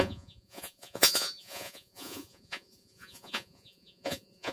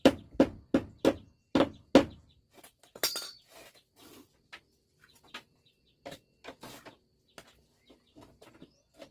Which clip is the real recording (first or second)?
second